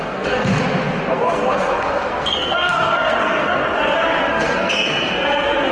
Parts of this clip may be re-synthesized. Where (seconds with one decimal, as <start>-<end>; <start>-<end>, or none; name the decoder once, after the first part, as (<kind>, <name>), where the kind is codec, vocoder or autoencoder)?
0.0-0.5 (codec, SNAC); 1.1-3.6; 4.2-5.7